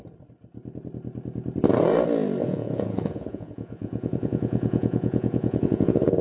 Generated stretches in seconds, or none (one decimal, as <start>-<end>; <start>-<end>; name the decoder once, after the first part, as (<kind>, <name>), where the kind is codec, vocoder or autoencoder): 2.4-6.2 (vocoder, Vocos)